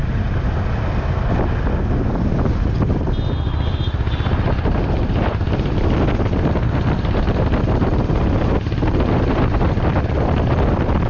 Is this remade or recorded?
recorded